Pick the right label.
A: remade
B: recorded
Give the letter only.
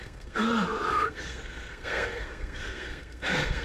A